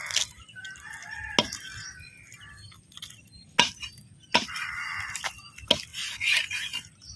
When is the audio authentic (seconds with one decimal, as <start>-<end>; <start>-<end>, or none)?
0.0-7.2